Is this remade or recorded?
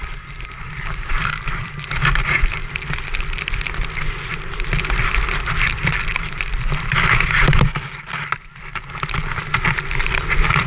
remade